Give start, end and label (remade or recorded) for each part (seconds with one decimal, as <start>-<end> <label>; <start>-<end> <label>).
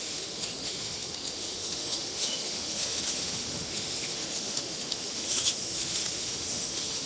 0.0-7.1 remade